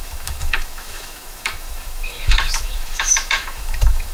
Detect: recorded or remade remade